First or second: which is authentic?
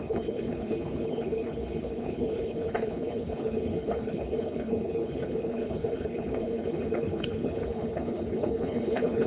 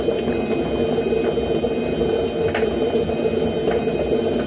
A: second